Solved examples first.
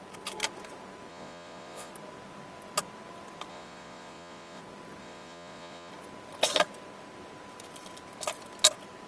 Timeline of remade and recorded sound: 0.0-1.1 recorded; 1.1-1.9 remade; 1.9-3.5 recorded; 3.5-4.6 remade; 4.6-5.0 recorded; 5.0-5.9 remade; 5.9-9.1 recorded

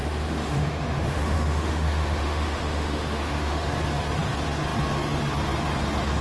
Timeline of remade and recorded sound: 0.0-3.7 remade; 3.7-6.2 recorded

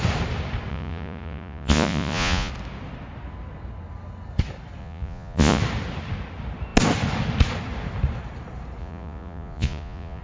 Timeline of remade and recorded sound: 0.0-0.7 recorded; 0.7-2.5 remade; 2.5-4.8 recorded; 4.8-5.6 remade; 5.6-8.8 recorded; 8.8-10.2 remade

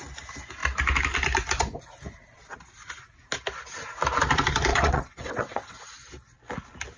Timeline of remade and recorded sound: 0.0-4.7 recorded; 4.7-6.1 remade; 6.1-7.0 recorded

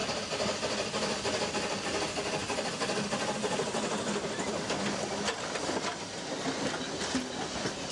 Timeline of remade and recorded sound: 0.0-2.4 recorded; 2.4-6.2 remade; 6.2-7.9 recorded

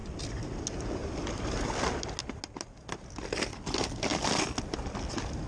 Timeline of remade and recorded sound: 0.0-5.5 recorded